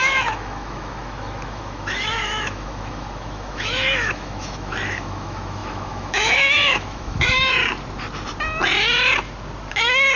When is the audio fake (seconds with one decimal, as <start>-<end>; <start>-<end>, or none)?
0.0-7.6; 9.7-10.2